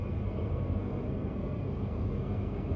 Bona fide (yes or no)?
no